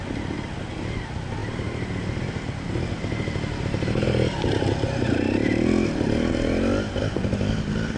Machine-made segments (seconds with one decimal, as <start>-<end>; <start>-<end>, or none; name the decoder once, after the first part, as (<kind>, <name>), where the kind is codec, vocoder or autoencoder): none